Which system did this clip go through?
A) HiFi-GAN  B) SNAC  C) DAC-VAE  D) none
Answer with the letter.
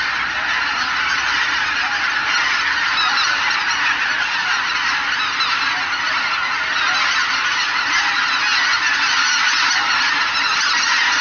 D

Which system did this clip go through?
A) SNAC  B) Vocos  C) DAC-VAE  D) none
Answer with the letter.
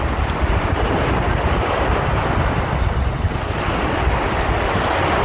D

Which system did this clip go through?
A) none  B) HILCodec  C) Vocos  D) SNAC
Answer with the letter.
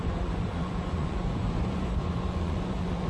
C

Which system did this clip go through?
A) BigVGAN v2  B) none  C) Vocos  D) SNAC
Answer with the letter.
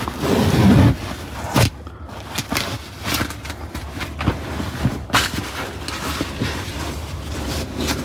B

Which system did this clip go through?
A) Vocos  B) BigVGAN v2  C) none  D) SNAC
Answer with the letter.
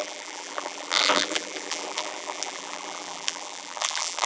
B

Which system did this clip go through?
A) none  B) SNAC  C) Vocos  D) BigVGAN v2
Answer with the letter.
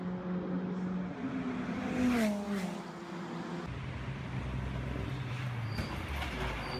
A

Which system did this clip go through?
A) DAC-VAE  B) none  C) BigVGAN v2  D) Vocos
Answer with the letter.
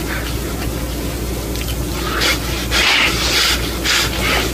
B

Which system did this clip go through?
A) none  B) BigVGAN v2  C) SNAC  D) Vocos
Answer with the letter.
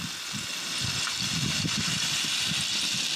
A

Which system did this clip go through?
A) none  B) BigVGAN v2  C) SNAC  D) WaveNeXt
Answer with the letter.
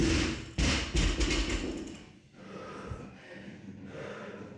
A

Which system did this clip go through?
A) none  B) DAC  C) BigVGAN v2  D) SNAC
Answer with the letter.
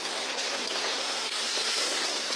D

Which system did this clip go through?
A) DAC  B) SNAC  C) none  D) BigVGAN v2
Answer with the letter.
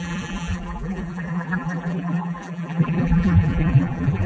D